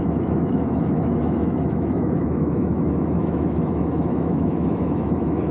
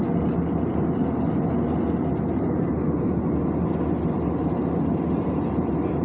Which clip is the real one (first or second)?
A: second